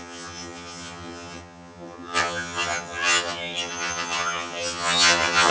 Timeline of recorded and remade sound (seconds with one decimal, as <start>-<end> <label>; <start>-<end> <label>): 0.0-5.5 remade